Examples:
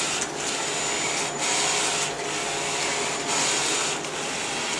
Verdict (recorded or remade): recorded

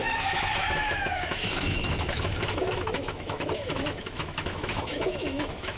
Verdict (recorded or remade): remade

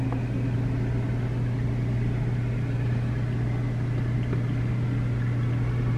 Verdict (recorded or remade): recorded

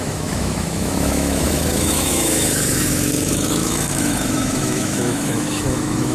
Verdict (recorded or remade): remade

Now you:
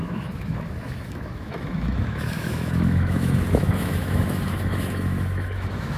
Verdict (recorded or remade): remade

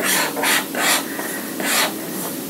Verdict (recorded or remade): recorded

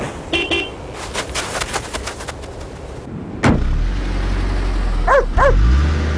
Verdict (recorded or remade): recorded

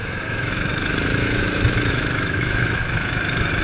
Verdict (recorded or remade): remade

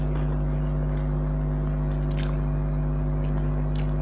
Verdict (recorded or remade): recorded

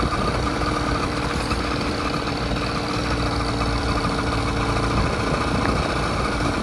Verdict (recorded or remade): recorded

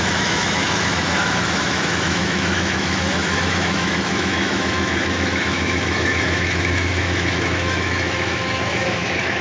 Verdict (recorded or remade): remade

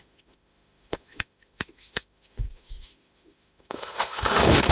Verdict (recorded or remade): remade